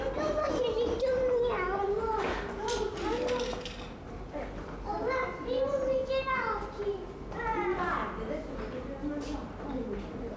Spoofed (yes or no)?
no